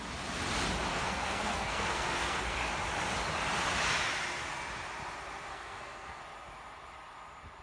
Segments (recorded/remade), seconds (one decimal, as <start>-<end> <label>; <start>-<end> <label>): 0.0-0.9 recorded; 0.9-2.8 remade; 2.8-5.5 recorded; 5.5-6.2 remade; 6.2-7.6 recorded